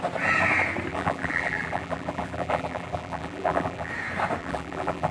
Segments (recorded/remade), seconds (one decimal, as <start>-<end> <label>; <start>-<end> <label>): 0.0-0.9 recorded; 0.9-3.9 remade; 3.9-4.4 recorded; 4.4-5.1 remade